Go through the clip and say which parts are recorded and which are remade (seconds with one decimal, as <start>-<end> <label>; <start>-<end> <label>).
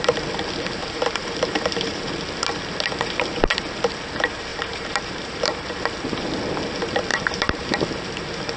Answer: 0.0-0.8 recorded; 0.8-2.0 remade; 2.0-4.5 recorded; 4.5-5.7 remade; 5.7-7.1 recorded; 7.1-7.6 remade; 7.6-8.6 recorded